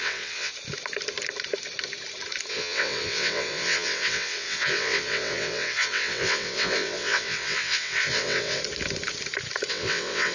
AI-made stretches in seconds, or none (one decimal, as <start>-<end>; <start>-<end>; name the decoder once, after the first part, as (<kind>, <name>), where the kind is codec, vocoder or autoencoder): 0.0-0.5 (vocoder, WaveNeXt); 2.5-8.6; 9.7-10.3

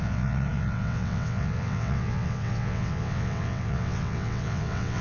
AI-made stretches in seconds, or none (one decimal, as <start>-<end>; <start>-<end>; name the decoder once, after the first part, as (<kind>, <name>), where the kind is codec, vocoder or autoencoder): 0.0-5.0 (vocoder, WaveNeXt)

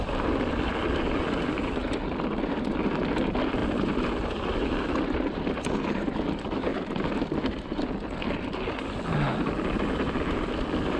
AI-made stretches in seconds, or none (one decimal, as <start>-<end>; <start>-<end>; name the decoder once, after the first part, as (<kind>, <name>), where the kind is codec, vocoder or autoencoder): none

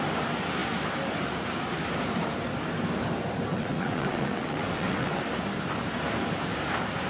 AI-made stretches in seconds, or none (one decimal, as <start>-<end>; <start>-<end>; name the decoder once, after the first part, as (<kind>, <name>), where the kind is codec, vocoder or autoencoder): 3.5-5.2 (vocoder, WaveNeXt)

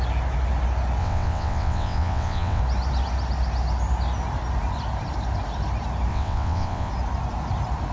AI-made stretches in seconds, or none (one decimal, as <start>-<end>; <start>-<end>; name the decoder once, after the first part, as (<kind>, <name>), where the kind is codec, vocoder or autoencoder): 1.0-2.6 (vocoder, WaveNeXt); 6.1-6.9

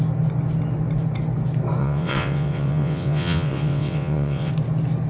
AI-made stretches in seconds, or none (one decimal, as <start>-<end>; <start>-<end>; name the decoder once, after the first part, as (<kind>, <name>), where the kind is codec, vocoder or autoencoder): 1.8-4.5 (vocoder, WaveNeXt)

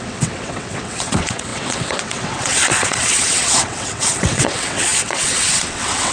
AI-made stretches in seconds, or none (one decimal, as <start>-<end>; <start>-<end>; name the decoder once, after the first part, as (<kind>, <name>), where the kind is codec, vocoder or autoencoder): 0.0-6.1 (vocoder, WaveNeXt)

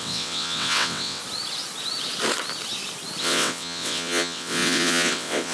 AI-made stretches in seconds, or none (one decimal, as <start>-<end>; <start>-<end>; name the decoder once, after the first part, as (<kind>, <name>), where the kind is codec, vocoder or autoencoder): 0.0-1.2 (vocoder, WaveNeXt); 3.2-5.5